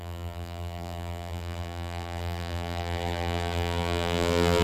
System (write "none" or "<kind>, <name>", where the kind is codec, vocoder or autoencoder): vocoder, BigVGAN v2